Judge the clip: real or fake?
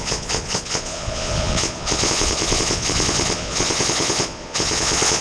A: fake